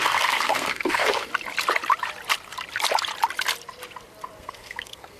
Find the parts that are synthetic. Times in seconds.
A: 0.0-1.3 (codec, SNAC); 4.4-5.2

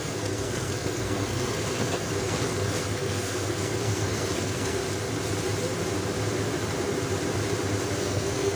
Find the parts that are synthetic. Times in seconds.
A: 0.0-4.8 (codec, SNAC); 8.0-8.6